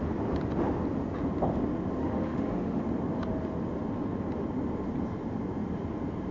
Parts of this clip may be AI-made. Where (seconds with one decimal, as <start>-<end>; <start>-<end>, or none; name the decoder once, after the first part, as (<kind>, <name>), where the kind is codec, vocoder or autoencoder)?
2.0-2.8 (autoencoder, DAC-VAE)